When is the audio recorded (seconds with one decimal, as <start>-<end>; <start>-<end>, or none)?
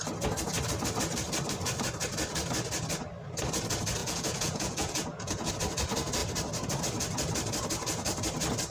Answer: 0.0-4.0; 5.5-8.7